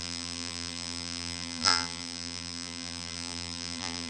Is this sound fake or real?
fake